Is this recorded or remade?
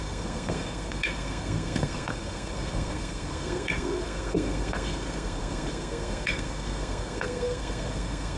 remade